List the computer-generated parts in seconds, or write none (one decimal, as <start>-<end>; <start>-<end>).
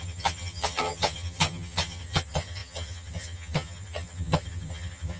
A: 0.0-5.2